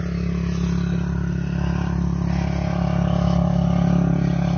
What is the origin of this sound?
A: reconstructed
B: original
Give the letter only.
B